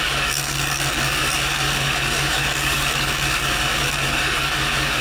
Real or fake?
fake